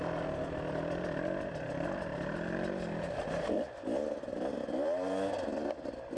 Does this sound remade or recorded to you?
recorded